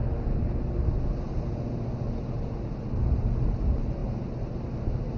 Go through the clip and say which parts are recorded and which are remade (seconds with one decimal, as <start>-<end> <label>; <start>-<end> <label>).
0.0-5.2 recorded

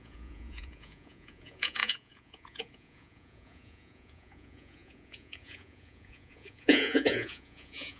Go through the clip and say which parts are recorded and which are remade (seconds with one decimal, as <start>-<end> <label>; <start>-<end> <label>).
0.0-8.0 remade

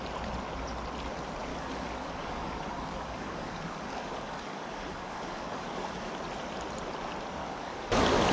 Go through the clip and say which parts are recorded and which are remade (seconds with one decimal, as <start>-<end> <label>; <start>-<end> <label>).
0.0-1.5 recorded; 1.5-6.1 remade; 6.1-7.4 recorded; 7.4-7.9 remade; 7.9-8.3 recorded

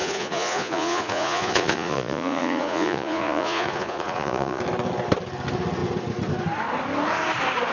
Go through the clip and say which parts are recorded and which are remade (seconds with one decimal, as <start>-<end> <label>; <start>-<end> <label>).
0.0-4.6 remade; 4.6-7.7 recorded